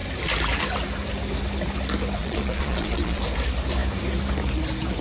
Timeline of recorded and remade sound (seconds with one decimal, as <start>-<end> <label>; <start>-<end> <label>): 0.0-2.2 recorded; 2.2-3.2 remade; 3.2-5.0 recorded